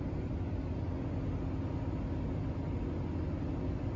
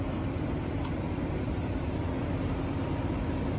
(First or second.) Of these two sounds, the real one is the first